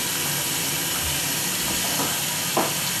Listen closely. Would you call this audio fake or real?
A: real